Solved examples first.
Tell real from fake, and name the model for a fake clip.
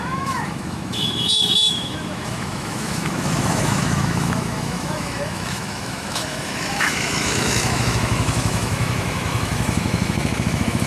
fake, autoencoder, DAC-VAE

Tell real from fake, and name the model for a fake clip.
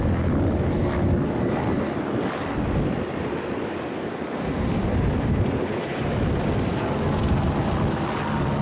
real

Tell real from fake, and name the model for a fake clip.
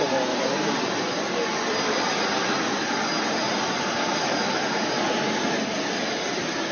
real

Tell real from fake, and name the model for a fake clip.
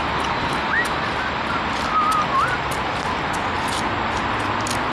real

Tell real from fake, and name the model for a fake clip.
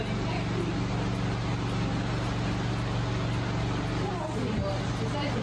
real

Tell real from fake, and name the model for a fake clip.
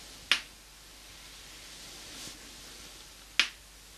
real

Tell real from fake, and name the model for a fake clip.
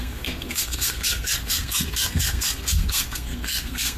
fake, codec, SNAC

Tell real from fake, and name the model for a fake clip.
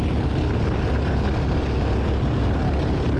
real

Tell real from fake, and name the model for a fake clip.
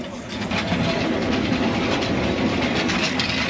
real